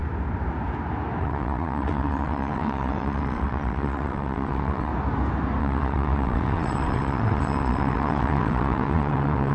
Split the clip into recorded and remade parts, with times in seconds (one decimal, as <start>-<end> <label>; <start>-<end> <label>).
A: 0.0-1.2 recorded; 1.2-4.9 remade; 4.9-5.6 recorded; 5.6-9.5 remade